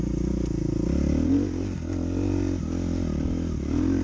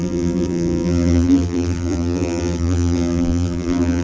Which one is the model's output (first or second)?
second